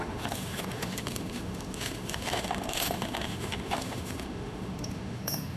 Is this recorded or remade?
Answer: remade